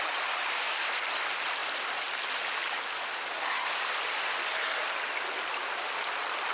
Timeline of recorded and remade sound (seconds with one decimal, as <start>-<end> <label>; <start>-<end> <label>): 0.0-6.5 recorded